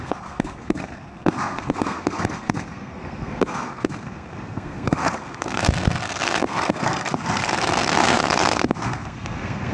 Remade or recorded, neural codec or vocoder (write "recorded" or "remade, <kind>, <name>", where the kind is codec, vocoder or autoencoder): remade, codec, SNAC